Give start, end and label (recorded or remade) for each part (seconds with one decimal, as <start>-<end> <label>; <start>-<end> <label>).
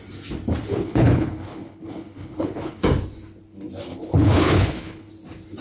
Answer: 0.0-0.7 recorded; 0.7-2.8 remade; 2.8-3.9 recorded; 3.9-5.1 remade; 5.1-5.6 recorded